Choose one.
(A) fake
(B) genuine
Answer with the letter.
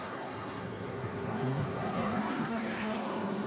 A